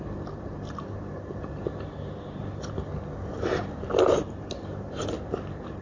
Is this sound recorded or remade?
recorded